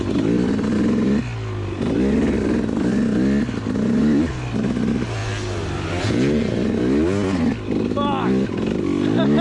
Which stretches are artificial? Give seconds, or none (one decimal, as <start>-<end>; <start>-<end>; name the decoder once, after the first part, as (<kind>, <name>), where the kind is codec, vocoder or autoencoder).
none